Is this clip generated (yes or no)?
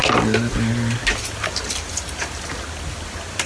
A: no